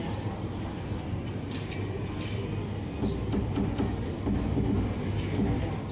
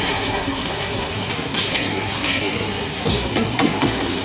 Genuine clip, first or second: first